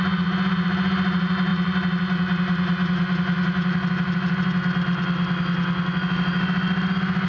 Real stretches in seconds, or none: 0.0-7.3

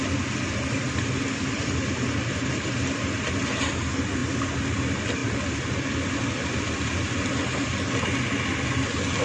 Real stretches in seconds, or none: 0.0-9.2

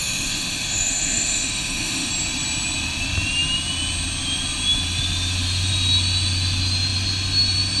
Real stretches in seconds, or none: 2.1-7.8

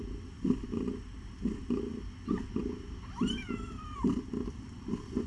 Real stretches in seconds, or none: 0.0-5.3